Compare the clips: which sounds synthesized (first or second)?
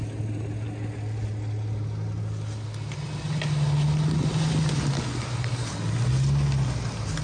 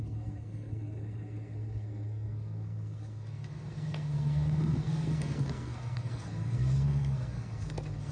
second